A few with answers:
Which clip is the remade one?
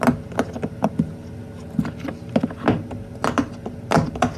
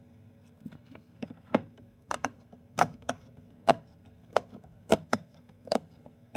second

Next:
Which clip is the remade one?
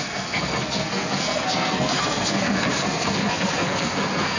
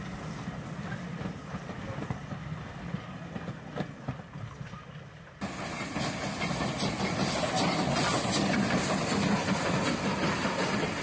first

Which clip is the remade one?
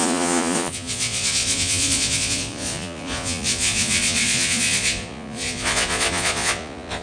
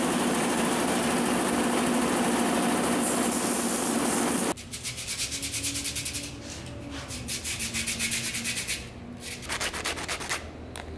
first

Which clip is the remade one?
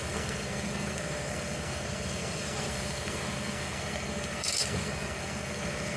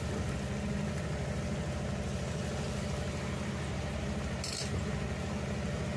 first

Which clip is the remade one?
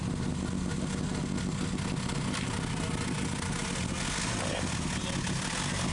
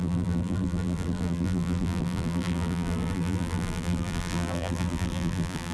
second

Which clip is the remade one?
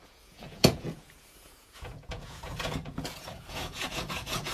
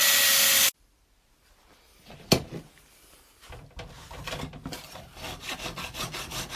first